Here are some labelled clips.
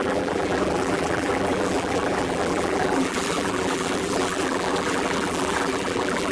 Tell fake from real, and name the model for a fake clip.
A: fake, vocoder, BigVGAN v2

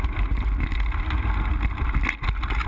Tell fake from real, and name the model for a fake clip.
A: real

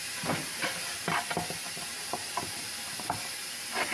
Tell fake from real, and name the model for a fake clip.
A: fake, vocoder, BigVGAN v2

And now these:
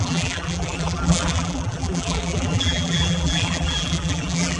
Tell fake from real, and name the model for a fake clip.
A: fake, vocoder, BigVGAN v2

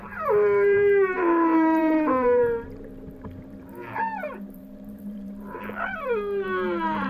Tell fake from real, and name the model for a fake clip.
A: fake, vocoder, BigVGAN v2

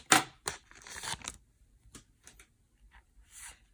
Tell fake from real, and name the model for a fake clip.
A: fake, vocoder, BigVGAN v2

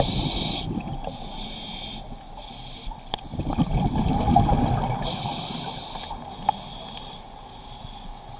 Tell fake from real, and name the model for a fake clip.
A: real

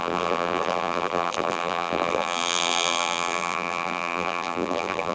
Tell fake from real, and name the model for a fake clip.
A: fake, vocoder, BigVGAN v2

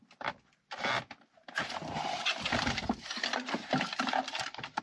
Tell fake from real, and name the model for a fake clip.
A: fake, vocoder, BigVGAN v2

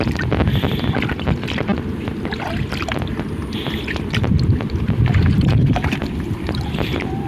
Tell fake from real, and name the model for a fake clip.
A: fake, vocoder, BigVGAN v2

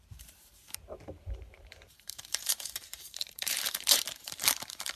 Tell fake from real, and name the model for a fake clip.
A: fake, vocoder, BigVGAN v2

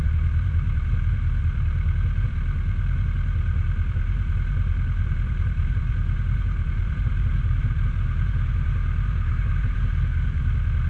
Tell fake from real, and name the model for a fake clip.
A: fake, vocoder, BigVGAN v2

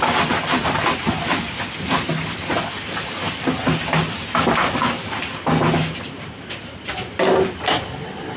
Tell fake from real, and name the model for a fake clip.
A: real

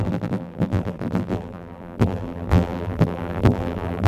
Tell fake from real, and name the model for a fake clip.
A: fake, vocoder, BigVGAN v2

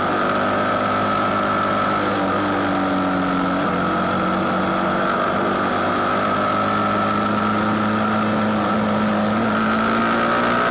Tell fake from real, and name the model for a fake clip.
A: real